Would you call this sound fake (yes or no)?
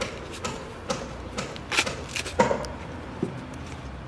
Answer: no